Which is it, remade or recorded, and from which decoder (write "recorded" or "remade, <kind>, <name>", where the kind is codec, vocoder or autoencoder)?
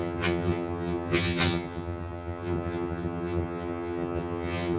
remade, vocoder, HiFi-GAN